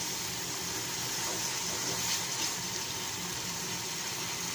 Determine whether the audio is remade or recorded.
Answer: recorded